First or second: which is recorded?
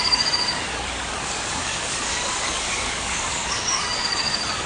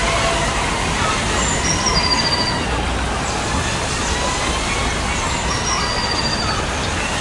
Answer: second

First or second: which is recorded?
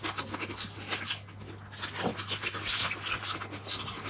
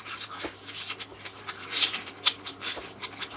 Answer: first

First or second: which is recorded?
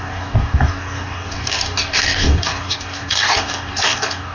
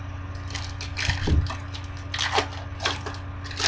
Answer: second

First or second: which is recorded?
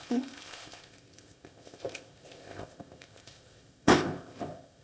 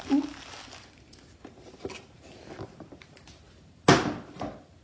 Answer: second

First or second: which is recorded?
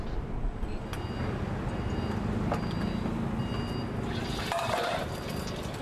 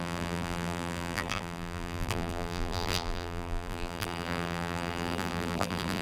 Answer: first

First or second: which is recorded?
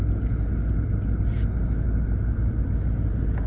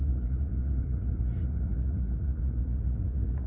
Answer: first